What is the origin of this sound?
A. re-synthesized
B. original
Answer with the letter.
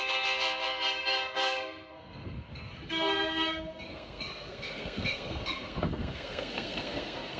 A